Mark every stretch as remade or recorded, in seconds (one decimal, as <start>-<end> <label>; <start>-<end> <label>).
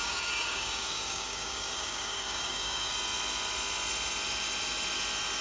0.0-2.9 remade; 2.9-5.4 recorded